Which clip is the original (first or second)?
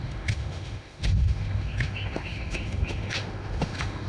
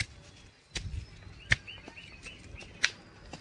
second